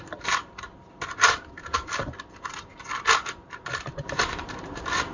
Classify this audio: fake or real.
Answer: fake